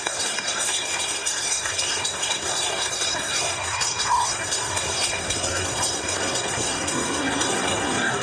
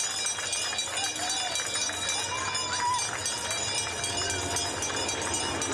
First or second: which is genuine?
second